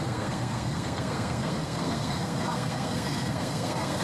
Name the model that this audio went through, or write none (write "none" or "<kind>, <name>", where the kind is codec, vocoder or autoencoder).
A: codec, SNAC